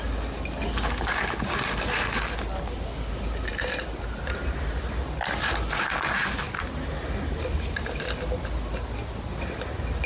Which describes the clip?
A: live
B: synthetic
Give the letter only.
A